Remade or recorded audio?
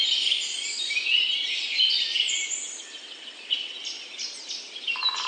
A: remade